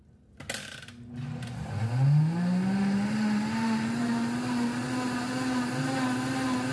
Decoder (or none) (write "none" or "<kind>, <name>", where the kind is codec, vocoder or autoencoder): none